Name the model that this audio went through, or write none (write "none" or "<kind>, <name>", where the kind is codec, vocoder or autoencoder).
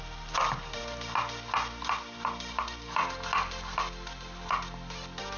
none